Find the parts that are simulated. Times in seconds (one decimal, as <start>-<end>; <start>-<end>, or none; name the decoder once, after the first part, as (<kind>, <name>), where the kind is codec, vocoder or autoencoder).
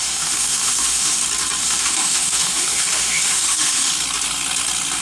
0.0-1.2 (autoencoder, DAC-VAE); 1.6-3.9